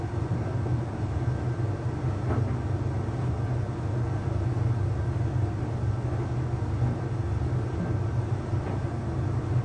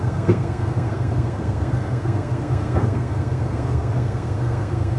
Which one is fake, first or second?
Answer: second